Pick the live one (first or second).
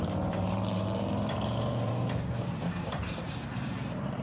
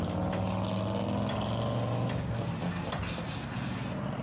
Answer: second